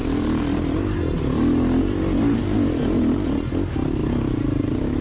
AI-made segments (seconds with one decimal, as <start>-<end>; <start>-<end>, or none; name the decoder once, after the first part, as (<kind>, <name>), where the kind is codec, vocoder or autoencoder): none